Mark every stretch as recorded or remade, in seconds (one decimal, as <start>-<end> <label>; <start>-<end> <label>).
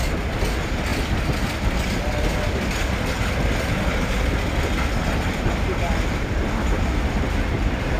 0.0-8.0 recorded